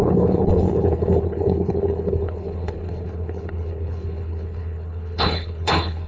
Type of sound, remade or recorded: remade